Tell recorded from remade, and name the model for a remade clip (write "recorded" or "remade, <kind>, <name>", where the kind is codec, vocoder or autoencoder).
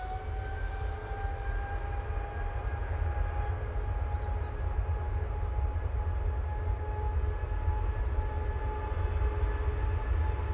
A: recorded